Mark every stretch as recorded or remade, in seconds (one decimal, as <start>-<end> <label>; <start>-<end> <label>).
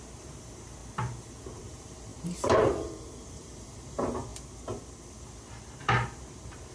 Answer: 0.0-0.8 remade; 0.8-1.4 recorded; 1.4-4.3 remade; 4.3-5.7 recorded; 5.7-6.7 remade